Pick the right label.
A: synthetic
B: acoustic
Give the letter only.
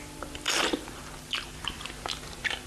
A